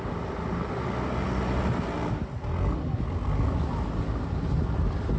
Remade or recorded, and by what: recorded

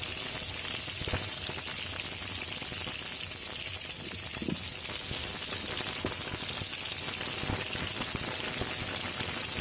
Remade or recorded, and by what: recorded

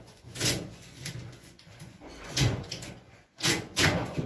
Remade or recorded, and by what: remade, vocoder, Vocos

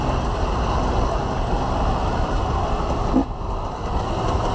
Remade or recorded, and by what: recorded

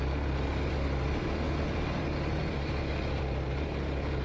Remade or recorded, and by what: recorded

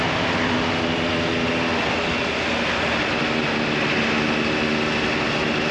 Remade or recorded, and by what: recorded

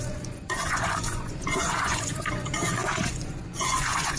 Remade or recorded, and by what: remade, vocoder, Vocos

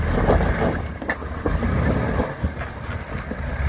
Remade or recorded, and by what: recorded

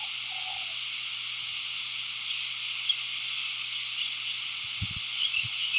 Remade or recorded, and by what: recorded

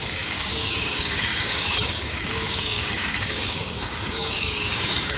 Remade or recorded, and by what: remade, codec, DAC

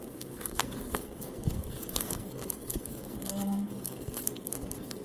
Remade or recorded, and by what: remade, codec, SNAC